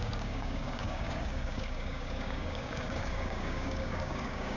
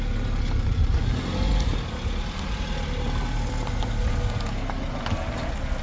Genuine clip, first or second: second